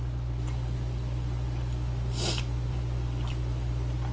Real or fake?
real